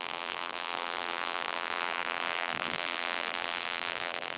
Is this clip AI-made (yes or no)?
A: yes